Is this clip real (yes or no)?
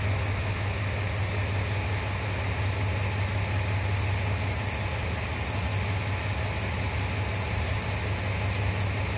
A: yes